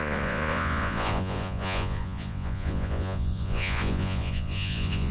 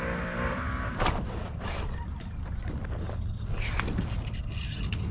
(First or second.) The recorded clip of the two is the second